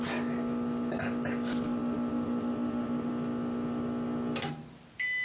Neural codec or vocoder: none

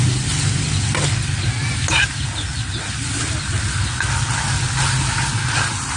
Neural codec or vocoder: none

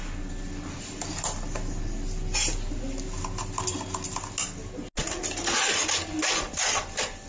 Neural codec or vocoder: none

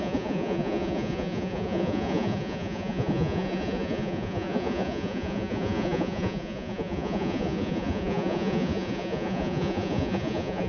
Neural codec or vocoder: vocoder, Vocos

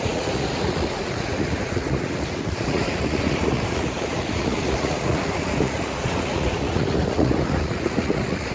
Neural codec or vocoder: vocoder, Vocos